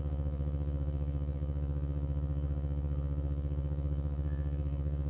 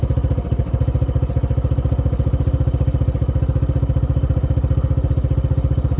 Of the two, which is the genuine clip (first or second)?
second